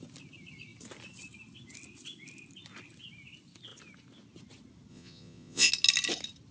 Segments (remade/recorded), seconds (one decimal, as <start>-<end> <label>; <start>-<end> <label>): 0.0-4.9 recorded; 4.9-5.7 remade; 5.7-6.5 recorded